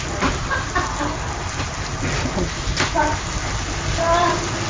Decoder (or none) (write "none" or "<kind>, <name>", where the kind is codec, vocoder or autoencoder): none